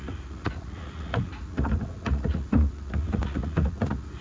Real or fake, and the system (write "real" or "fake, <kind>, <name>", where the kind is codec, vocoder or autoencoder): fake, vocoder, Vocos